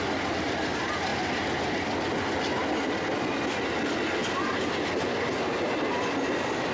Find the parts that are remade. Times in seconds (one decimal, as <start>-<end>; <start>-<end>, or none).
none